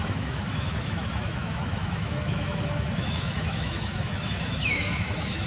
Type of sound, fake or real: fake